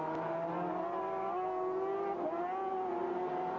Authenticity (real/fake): real